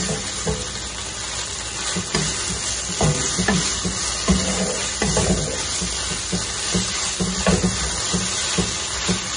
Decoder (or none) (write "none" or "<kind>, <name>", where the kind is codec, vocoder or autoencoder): none